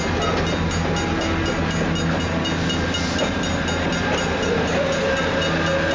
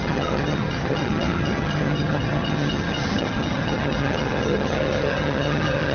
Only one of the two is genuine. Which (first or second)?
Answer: first